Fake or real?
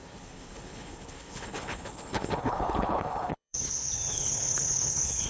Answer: fake